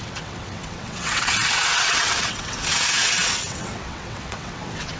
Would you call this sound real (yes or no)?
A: no